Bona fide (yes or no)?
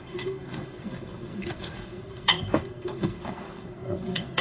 no